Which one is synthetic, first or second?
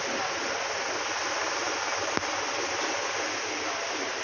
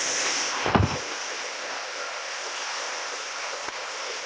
second